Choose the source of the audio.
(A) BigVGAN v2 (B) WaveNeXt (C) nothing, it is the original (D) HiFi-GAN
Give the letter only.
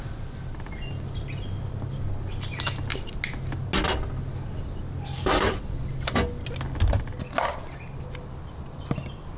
C